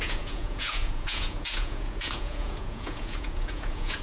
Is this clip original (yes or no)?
no